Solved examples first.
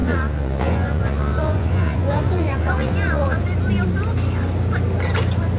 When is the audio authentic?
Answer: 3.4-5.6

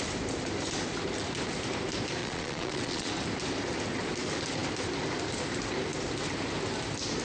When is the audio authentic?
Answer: 0.0-2.2; 3.1-7.2

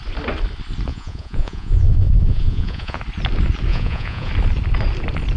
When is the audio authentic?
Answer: 0.0-0.9; 3.0-3.7; 4.3-5.4

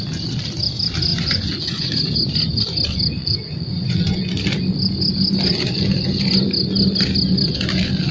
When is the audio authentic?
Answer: 0.0-1.1; 1.9-3.2; 4.2-8.1

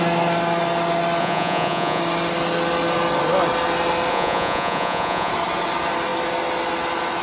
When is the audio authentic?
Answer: 0.0-1.2; 2.0-4.1; 5.3-7.2

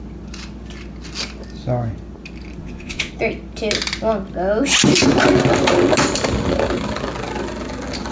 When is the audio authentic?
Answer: 0.0-2.6; 3.1-8.1

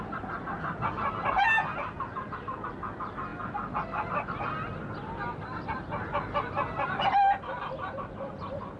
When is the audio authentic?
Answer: 0.0-8.8